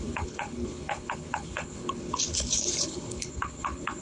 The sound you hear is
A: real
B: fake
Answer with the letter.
B